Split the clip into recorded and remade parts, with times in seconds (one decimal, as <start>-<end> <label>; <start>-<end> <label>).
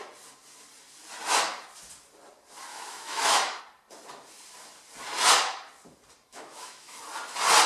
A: 0.0-2.7 recorded; 2.7-3.6 remade; 3.6-6.3 recorded; 6.3-7.0 remade; 7.0-7.7 recorded